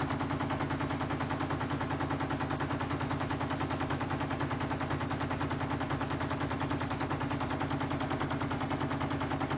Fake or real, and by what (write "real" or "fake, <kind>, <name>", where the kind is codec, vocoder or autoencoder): real